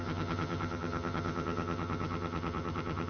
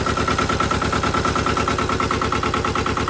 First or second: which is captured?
second